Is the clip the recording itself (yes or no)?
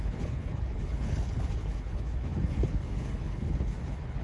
no